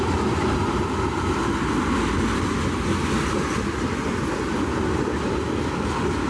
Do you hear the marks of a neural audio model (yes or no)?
no